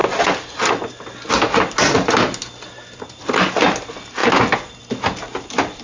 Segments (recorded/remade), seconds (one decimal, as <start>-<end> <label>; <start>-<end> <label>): 0.0-5.8 recorded